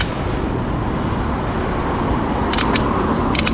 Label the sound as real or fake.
real